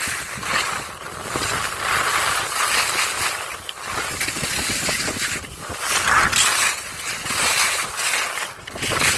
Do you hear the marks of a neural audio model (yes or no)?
no